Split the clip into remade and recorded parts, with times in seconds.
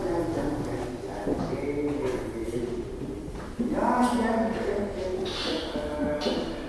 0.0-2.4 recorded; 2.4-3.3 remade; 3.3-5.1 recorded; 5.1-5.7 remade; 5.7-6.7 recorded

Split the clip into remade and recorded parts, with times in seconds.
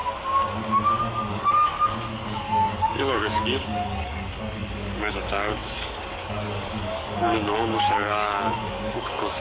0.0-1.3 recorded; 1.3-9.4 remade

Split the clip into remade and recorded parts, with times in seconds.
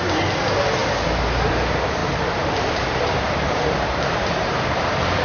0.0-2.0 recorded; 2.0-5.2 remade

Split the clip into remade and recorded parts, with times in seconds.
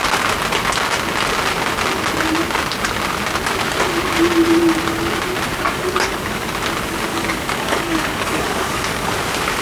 0.0-5.5 recorded; 5.5-6.5 remade; 6.5-7.1 recorded; 7.1-9.1 remade; 9.1-9.6 recorded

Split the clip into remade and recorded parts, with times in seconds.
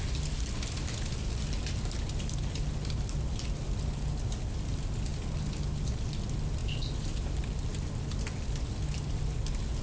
0.0-9.8 recorded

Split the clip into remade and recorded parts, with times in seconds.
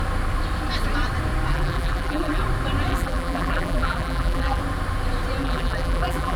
0.0-1.5 recorded; 1.5-2.4 remade; 2.4-2.9 recorded; 2.9-4.6 remade; 4.6-5.4 recorded; 5.4-6.4 remade